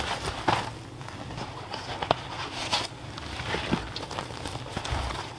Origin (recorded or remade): recorded